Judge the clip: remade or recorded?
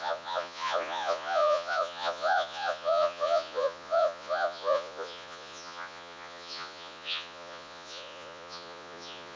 remade